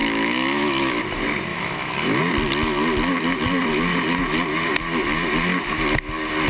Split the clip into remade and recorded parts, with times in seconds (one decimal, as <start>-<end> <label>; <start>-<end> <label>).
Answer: 0.0-1.0 remade; 1.0-1.5 recorded; 1.5-2.2 remade; 2.2-6.5 recorded